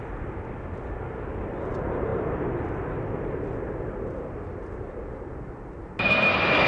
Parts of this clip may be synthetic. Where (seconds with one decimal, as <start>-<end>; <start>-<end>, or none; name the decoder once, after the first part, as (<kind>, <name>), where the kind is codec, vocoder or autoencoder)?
none